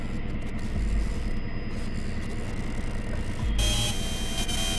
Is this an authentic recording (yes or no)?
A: yes